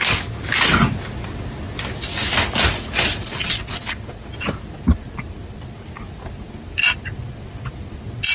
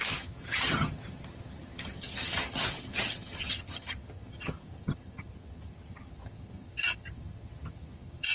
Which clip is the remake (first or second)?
second